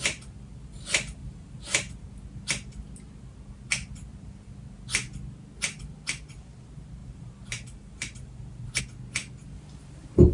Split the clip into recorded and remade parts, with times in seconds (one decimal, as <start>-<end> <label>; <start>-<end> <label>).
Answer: 0.0-1.2 recorded; 1.2-1.9 remade; 1.9-7.0 recorded; 7.0-8.8 remade; 8.8-10.3 recorded